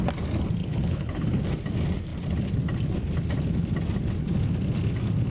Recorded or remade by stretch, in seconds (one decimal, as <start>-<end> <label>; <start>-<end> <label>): 0.0-0.6 recorded; 0.6-1.4 remade; 1.4-5.3 recorded